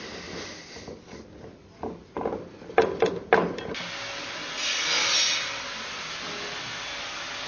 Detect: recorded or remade recorded